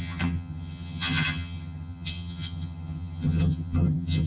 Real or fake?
fake